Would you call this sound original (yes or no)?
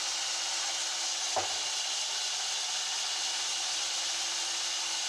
yes